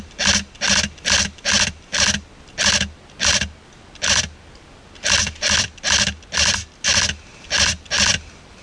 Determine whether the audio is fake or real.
real